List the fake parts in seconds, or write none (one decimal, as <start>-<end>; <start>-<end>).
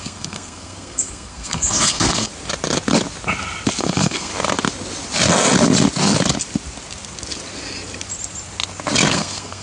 0.0-2.3; 3.8-4.3; 9.1-9.6